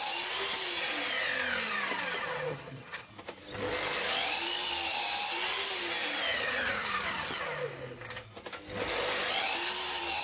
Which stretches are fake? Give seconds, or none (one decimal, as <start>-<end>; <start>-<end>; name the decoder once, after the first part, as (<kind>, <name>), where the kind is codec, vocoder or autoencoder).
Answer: 2.5-3.1 (vocoder, HiFi-GAN); 6.3-7.4

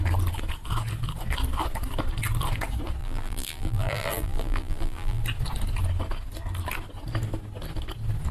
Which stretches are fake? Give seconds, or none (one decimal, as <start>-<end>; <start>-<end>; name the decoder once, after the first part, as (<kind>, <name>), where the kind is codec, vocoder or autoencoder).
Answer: 3.0-5.2 (vocoder, BigVGAN v2)